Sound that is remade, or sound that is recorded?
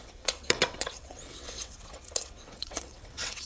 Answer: remade